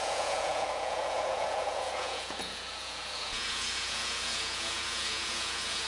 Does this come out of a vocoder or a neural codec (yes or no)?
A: yes